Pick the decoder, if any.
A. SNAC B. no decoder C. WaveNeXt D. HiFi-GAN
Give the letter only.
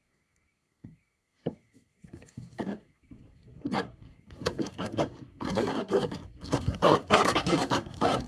A